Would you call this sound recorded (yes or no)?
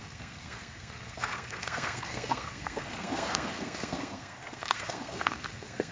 no